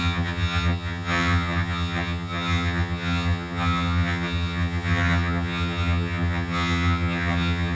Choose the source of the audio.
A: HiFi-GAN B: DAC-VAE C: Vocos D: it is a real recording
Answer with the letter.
A